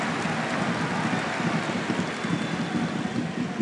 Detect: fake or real real